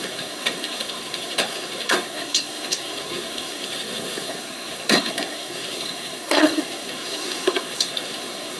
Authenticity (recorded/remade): remade